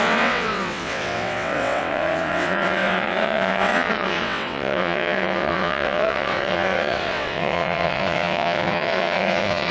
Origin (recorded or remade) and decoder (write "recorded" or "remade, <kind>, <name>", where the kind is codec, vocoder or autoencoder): remade, vocoder, WaveNeXt